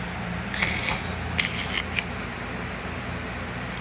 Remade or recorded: recorded